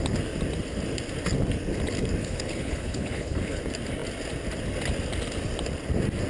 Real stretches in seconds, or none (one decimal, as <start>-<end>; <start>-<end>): 0.0-2.2; 3.6-6.3